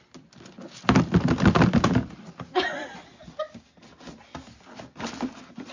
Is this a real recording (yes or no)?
yes